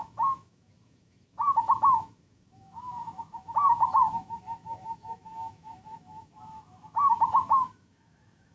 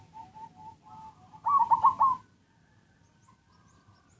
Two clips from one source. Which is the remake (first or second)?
first